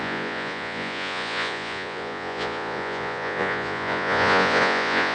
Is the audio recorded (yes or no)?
no